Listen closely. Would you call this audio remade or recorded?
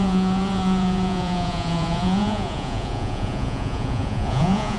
remade